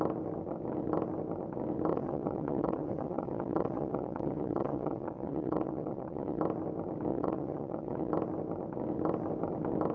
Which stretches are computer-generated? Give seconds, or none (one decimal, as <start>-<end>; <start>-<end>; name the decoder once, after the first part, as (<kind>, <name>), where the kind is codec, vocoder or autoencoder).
1.9-6.4 (vocoder, WaveNeXt); 7.1-8.1